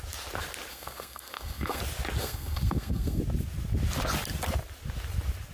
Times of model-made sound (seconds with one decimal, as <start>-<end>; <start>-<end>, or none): 0.7-1.8; 2.2-3.2